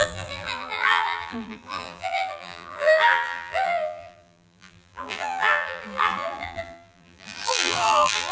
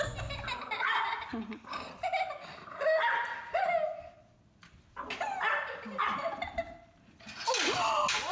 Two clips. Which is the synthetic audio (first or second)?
first